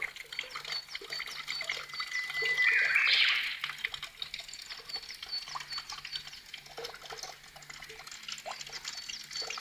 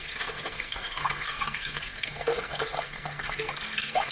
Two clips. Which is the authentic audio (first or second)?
first